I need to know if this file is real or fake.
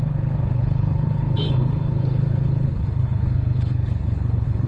fake